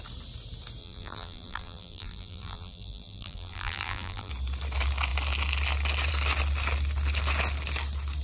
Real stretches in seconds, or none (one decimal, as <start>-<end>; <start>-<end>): 0.0-0.8; 4.3-8.2